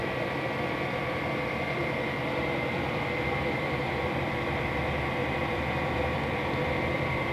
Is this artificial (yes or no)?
yes